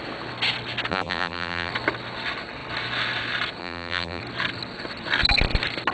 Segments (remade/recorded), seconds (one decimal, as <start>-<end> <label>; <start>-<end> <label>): 0.0-0.9 recorded; 0.9-1.7 remade; 1.7-3.6 recorded; 3.6-4.2 remade; 4.2-5.9 recorded